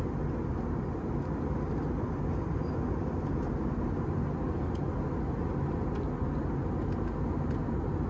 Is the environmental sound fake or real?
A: real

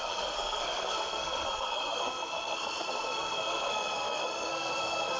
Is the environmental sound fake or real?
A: fake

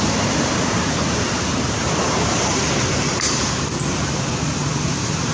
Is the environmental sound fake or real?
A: fake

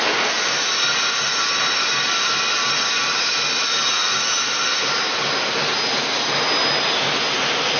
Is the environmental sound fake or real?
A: real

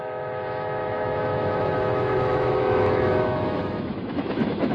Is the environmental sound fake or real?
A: fake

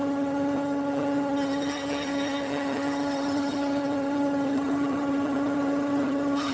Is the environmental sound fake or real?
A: fake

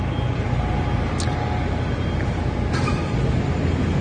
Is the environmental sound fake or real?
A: real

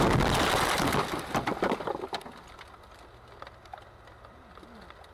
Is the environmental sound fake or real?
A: real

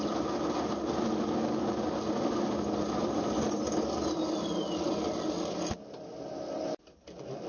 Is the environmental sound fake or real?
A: real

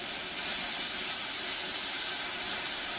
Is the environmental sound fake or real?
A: fake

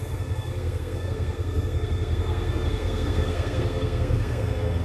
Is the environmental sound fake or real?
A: fake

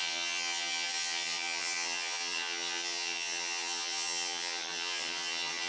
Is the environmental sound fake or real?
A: fake